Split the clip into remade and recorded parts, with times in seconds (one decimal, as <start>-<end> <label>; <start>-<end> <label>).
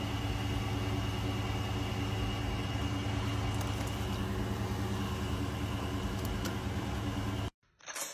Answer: 0.0-8.1 recorded